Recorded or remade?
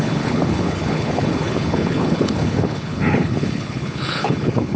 remade